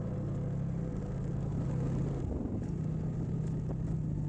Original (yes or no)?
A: yes